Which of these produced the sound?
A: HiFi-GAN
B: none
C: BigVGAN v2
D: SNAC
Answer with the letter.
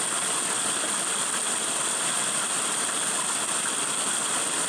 B